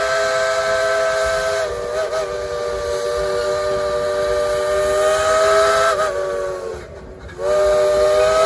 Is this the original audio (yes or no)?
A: yes